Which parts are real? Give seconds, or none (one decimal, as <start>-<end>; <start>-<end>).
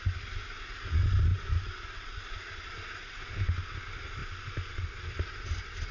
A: 0.0-5.9